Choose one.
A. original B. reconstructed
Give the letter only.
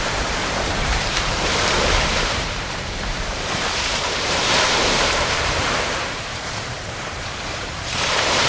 B